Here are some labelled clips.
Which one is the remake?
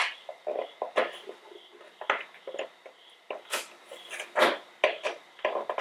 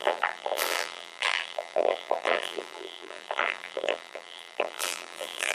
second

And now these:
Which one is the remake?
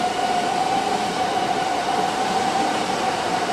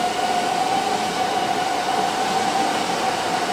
first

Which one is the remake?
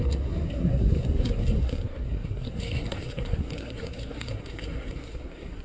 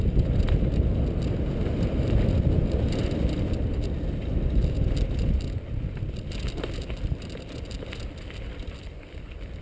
first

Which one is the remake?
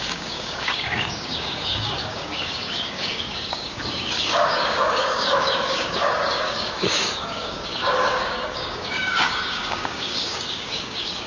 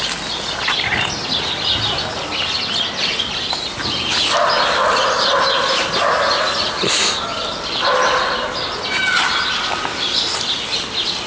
first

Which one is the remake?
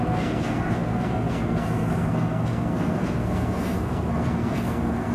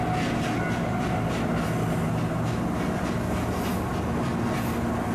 first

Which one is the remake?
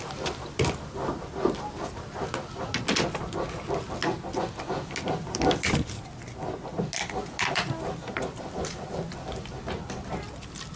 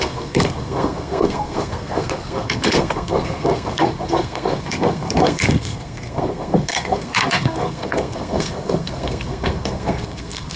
second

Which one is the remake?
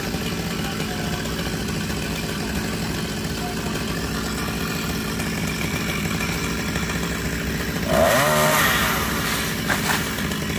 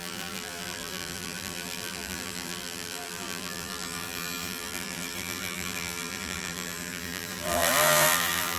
second